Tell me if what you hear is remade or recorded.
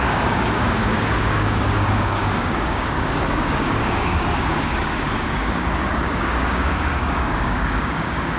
remade